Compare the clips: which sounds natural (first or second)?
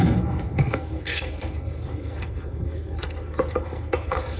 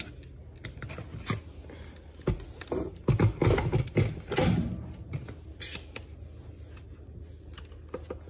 second